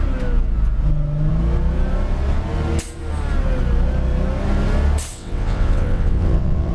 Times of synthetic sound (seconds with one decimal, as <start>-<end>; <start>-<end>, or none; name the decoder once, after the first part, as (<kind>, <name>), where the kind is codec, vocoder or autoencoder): 5.1-6.7 (vocoder, WaveNeXt)